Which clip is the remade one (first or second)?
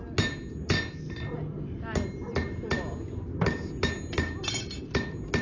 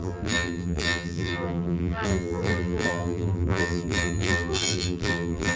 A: second